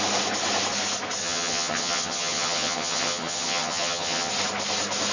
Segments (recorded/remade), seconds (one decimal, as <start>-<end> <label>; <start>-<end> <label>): 0.0-1.2 recorded; 1.2-4.3 remade; 4.3-5.1 recorded